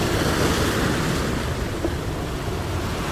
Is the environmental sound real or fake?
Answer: real